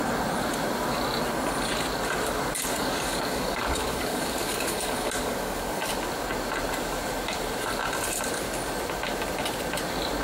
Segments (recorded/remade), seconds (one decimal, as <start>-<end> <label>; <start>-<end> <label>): 0.0-2.7 recorded; 2.7-5.9 remade; 5.9-10.2 recorded